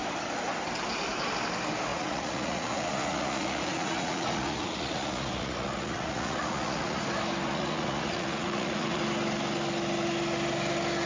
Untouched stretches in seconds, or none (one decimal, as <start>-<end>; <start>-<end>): 0.0-1.9; 7.0-7.5; 9.0-11.1